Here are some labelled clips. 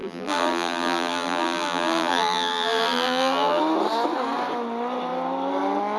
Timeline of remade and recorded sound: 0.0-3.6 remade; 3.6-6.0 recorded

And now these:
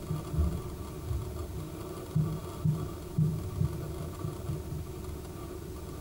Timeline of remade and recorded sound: 0.0-6.0 recorded

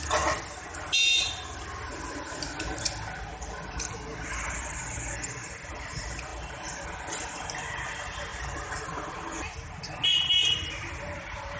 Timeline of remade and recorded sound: 0.0-3.3 recorded; 3.3-5.1 remade; 5.1-6.3 recorded; 6.3-6.9 remade; 6.9-8.3 recorded; 8.3-9.2 remade; 9.2-11.6 recorded

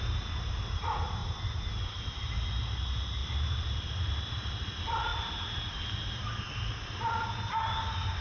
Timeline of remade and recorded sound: 0.0-3.2 recorded; 3.2-4.5 remade; 4.5-8.2 recorded